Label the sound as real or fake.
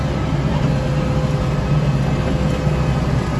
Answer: real